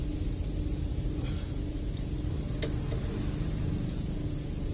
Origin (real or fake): real